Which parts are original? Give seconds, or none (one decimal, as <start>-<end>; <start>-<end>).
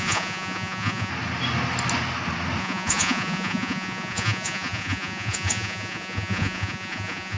1.1-2.6